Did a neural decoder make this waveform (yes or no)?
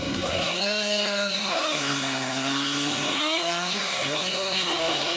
yes